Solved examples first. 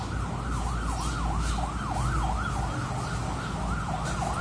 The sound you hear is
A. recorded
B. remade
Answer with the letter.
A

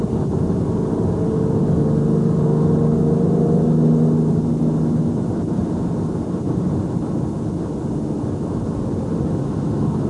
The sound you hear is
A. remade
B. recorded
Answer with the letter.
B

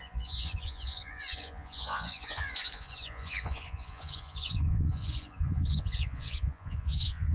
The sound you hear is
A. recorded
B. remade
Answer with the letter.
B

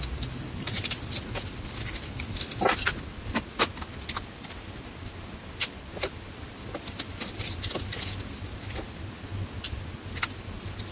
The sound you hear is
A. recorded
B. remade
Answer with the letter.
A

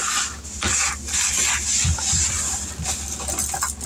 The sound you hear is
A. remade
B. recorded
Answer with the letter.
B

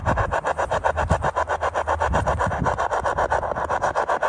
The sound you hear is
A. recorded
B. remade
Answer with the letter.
A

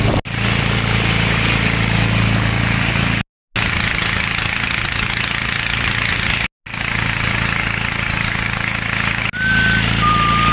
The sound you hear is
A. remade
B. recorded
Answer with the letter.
B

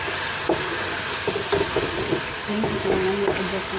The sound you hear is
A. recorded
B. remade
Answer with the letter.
A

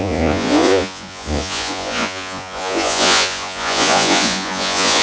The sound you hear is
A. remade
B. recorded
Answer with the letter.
A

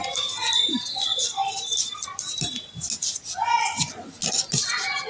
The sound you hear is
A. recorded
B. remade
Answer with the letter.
A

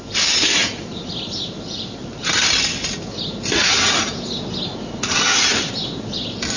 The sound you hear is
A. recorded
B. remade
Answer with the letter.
A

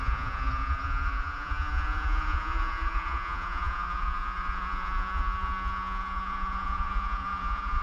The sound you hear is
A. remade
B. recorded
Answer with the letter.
A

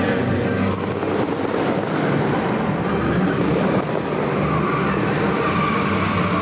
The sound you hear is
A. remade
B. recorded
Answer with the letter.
B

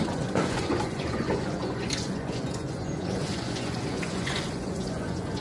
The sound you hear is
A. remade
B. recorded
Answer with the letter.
A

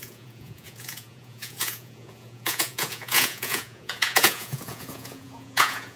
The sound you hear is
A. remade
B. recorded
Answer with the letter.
A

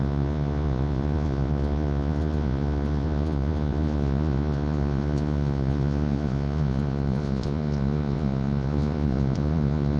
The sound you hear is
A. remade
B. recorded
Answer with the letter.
A